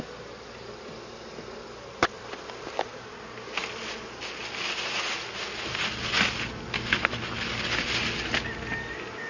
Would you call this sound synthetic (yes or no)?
no